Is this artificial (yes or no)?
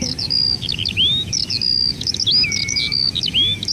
yes